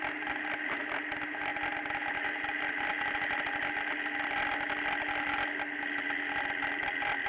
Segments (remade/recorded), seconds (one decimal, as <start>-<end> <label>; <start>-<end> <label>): 0.0-7.3 recorded